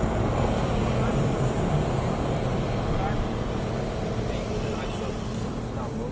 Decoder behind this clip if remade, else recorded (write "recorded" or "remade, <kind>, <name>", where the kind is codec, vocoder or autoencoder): recorded